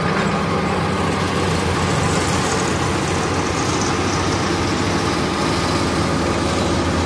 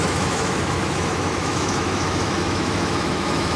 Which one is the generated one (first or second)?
second